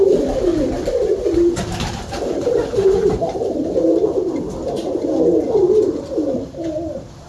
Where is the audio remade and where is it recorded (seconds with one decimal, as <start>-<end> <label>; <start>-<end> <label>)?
0.0-0.5 remade; 0.5-1.6 recorded; 1.6-4.6 remade; 4.6-5.9 recorded; 5.9-7.3 remade